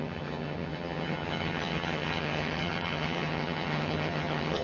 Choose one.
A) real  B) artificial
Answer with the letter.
B